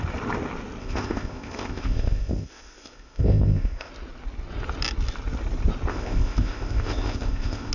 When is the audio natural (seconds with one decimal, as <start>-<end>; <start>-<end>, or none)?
0.0-0.8; 3.9-5.9